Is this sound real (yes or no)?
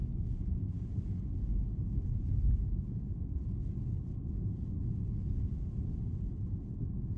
yes